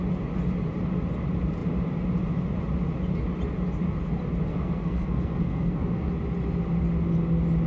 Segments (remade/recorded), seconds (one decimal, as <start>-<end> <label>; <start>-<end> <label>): 0.0-4.5 recorded; 4.5-6.1 remade; 6.1-7.7 recorded